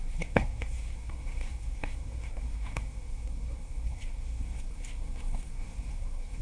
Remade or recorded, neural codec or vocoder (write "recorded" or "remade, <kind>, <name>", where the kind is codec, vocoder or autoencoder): remade, codec, SNAC